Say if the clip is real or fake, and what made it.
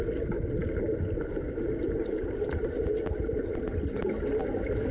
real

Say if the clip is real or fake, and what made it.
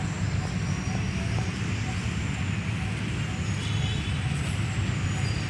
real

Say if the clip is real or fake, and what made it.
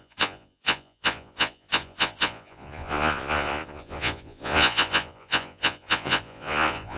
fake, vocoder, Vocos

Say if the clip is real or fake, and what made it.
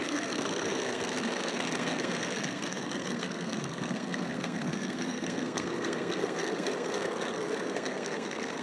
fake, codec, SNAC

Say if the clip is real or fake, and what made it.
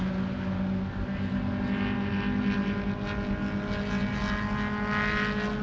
real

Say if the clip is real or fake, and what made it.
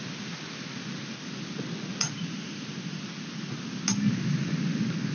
real